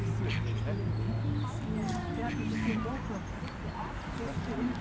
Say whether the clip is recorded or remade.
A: recorded